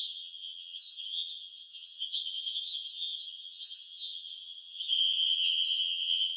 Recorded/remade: remade